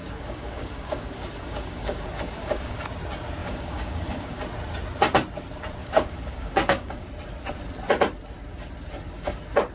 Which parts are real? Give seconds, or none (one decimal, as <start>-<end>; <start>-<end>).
2.8-3.4; 4.4-5.8; 7.1-9.7